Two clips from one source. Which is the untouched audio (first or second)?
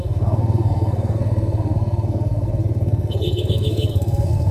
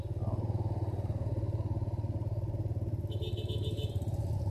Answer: second